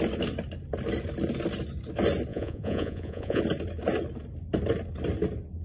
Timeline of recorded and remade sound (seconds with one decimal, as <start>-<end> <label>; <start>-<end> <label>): 0.0-2.3 recorded; 2.3-3.4 remade; 3.4-5.6 recorded